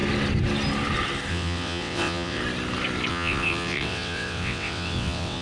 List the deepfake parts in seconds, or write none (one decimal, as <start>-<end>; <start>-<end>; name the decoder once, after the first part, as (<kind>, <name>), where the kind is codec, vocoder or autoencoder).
1.3-2.4 (vocoder, WaveNeXt); 3.1-5.4